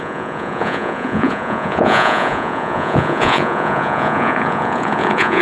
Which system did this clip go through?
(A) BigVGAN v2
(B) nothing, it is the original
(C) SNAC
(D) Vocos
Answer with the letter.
D